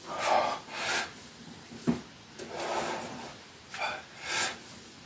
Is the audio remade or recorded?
recorded